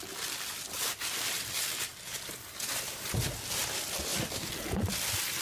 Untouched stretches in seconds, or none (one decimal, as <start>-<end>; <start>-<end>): 0.0-1.9; 3.2-4.1